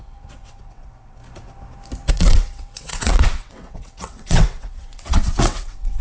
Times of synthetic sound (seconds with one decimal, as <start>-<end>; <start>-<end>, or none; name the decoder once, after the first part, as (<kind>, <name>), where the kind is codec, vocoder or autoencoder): 0.0-1.2 (vocoder, WaveNeXt); 2.1-6.0